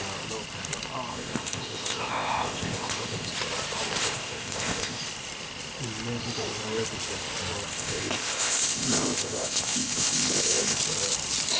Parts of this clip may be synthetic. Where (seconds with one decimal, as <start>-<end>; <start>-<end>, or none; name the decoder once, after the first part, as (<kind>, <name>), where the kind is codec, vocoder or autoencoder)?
1.1-3.3 (codec, ZipCodec); 4.0-5.0; 7.7-10.8

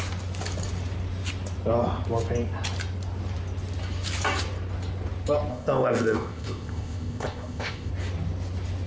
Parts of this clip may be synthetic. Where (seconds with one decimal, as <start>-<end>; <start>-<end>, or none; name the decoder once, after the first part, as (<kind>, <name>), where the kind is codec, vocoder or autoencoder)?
5.5-7.9 (codec, ZipCodec)